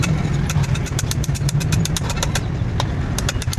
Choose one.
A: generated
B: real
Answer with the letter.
A